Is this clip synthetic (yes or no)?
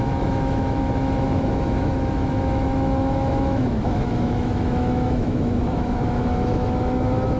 yes